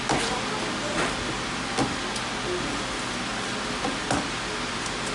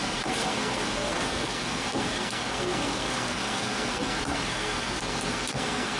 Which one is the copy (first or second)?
second